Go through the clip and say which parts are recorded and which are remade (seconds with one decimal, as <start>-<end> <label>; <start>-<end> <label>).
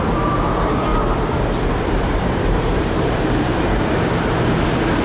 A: 0.0-0.9 recorded; 0.9-3.9 remade; 3.9-5.0 recorded